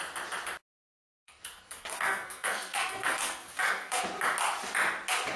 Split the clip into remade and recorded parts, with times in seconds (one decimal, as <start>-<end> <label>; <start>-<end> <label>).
0.0-0.8 recorded; 0.8-4.0 remade; 4.0-5.4 recorded